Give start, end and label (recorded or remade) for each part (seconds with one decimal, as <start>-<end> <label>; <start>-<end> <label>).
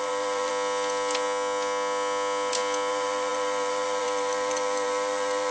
0.0-0.5 remade; 0.5-2.9 recorded; 2.9-5.5 remade